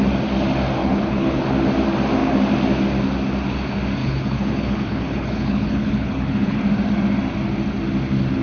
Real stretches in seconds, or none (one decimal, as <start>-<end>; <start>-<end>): 0.0-0.8; 1.4-4.0; 6.6-8.4